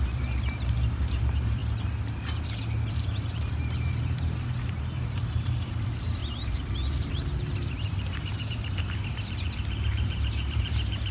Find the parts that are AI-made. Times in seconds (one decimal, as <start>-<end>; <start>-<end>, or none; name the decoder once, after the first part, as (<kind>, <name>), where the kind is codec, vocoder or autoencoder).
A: 0.0-1.6 (vocoder, BigVGAN v2); 2.9-11.1